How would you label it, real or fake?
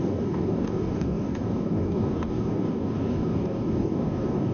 fake